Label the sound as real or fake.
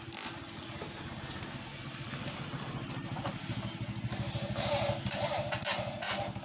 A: real